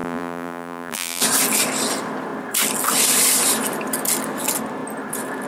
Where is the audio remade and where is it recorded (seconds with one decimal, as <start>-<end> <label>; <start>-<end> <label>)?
0.0-1.2 remade; 1.2-5.5 recorded